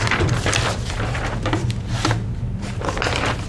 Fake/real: real